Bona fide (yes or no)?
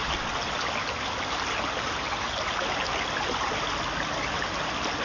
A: yes